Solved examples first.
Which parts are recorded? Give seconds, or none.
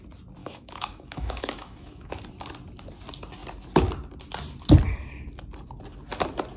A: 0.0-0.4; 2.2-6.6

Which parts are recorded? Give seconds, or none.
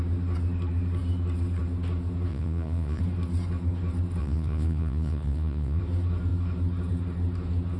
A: 0.0-2.3; 3.0-4.2; 5.8-7.8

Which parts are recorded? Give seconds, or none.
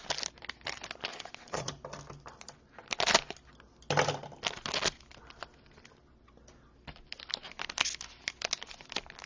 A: 0.0-1.1; 1.7-9.3